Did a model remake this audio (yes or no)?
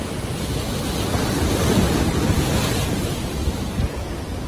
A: no